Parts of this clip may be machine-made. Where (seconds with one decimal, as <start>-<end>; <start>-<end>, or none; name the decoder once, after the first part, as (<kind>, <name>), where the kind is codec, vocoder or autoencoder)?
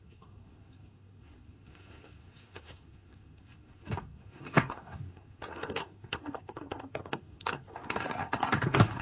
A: 0.0-9.0 (codec, SNAC)